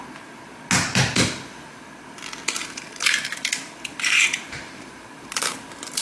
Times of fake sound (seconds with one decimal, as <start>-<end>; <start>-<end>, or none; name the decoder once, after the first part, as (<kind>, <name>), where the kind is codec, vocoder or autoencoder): 2.6-5.6 (vocoder, BigVGAN v2)